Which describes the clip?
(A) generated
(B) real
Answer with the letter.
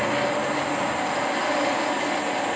B